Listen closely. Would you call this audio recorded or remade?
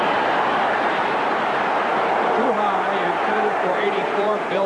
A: remade